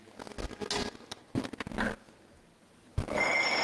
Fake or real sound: real